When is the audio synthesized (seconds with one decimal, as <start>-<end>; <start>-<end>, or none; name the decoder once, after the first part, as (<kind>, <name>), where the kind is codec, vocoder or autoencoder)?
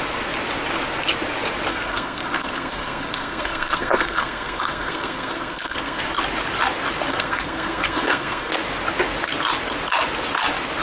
1.7-6.0 (codec, SNAC); 7.1-8.5